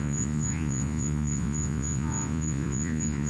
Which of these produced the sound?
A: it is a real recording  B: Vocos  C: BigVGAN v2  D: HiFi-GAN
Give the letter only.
B